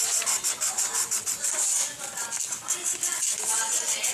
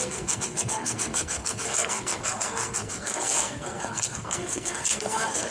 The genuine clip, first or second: first